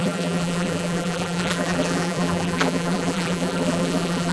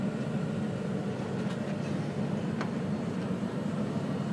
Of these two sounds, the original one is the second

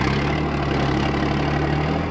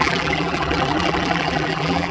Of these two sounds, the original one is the first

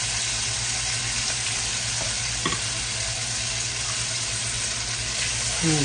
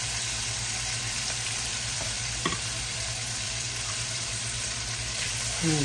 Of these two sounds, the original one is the first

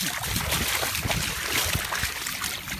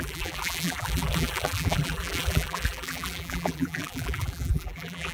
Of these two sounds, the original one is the first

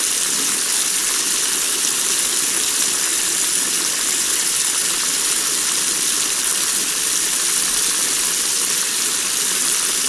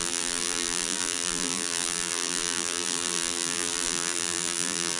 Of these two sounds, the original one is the first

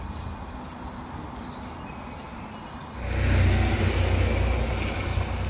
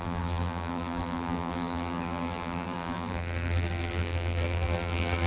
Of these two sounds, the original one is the first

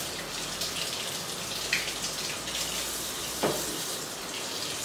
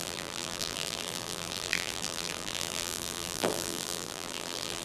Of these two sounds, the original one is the first